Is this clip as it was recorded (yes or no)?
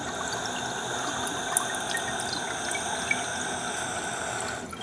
yes